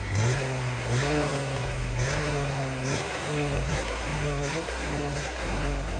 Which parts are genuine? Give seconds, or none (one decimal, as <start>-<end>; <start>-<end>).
none